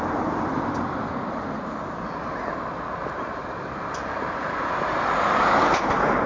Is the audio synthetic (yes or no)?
no